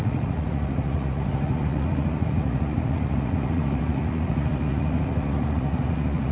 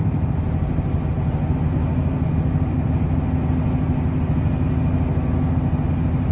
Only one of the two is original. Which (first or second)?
second